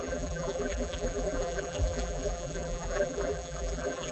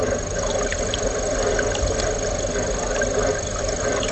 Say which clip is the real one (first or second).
second